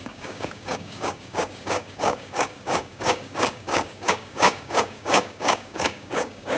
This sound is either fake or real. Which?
fake